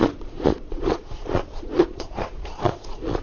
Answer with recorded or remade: remade